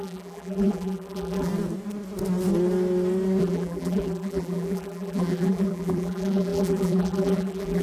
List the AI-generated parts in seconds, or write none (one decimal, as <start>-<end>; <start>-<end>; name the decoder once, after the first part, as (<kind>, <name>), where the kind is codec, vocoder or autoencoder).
0.0-1.5 (vocoder, BigVGAN v2); 3.4-7.8